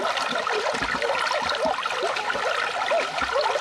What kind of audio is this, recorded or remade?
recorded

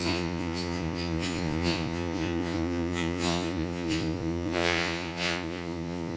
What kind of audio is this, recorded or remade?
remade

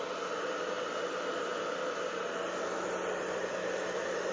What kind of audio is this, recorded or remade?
recorded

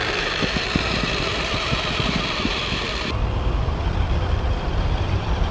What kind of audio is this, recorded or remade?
recorded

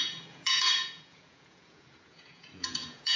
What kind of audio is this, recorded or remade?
remade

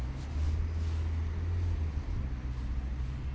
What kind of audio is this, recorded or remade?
recorded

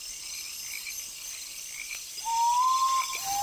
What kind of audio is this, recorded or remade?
recorded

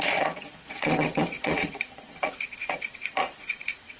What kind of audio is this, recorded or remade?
remade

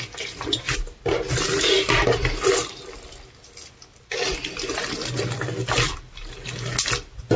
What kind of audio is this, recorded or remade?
recorded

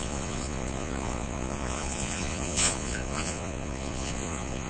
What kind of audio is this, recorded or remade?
remade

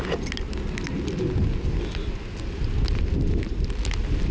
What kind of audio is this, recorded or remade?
recorded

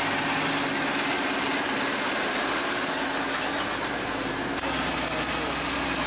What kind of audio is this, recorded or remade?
recorded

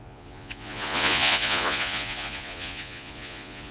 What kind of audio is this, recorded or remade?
remade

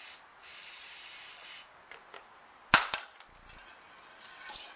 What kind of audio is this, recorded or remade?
recorded